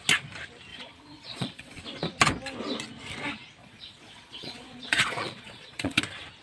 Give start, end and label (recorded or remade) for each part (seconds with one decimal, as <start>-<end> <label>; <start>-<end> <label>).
0.0-0.7 recorded; 0.7-1.8 remade; 1.8-3.6 recorded; 3.6-6.0 remade; 6.0-6.4 recorded